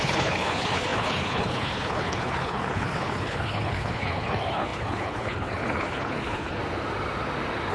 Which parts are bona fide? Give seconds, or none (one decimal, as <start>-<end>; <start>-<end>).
6.6-7.7